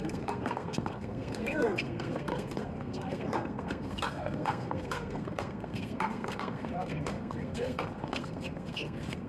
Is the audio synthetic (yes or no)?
yes